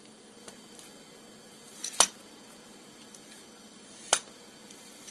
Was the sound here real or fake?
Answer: real